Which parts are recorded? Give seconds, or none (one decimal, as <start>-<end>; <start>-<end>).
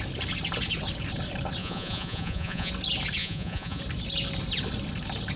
0.0-1.6; 2.7-3.2; 3.8-5.4